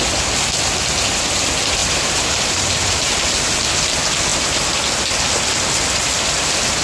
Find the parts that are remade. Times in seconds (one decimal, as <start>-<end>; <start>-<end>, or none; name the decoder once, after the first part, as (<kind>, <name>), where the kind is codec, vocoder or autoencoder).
1.8-3.6 (vocoder, BigVGAN v2)